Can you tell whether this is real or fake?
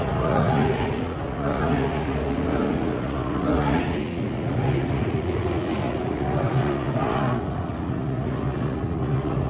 fake